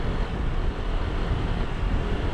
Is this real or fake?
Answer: real